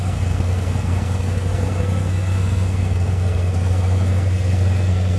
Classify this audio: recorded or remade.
remade